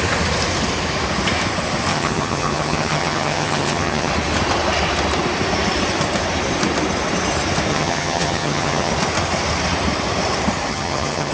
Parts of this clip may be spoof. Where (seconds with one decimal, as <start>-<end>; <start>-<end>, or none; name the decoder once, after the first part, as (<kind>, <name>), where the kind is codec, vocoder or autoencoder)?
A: 1.9-4.1 (vocoder, HiFi-GAN); 7.7-8.9; 10.7-11.3